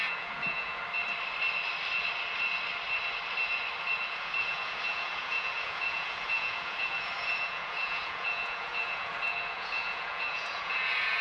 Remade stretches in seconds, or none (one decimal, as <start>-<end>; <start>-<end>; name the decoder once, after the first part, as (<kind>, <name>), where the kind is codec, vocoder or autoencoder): 0.0-0.8 (vocoder, Vocos); 4.1-11.2

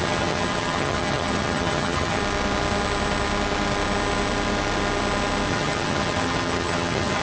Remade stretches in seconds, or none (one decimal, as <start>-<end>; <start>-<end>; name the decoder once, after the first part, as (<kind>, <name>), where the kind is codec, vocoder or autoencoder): 0.0-2.2 (vocoder, HiFi-GAN); 5.5-7.2

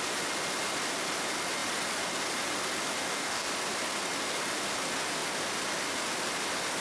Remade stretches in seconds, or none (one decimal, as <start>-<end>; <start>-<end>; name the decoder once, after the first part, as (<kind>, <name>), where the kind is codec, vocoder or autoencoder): 3.0-3.5 (codec, DAC)

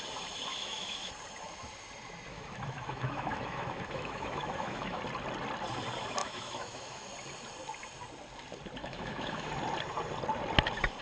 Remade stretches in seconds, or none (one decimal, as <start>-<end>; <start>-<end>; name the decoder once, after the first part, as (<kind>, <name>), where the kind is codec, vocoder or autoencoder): 0.5-1.1 (autoencoder, DAC-VAE); 2.3-5.0; 6.2-7.1; 8.8-9.5

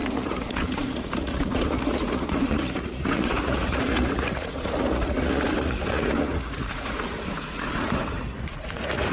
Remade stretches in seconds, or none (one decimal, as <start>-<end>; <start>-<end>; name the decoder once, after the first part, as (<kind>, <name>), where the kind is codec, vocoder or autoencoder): 0.0-9.1 (vocoder, Vocos)

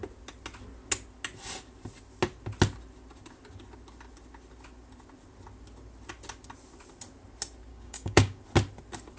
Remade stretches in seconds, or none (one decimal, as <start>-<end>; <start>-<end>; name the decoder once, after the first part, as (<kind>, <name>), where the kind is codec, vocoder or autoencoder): 7.7-8.4 (codec, DAC)

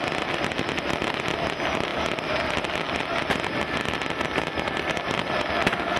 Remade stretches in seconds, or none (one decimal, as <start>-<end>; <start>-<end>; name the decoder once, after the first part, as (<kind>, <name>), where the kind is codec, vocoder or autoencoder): none